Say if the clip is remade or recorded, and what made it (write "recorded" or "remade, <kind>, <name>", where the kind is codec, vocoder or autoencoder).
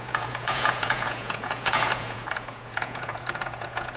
remade, vocoder, Vocos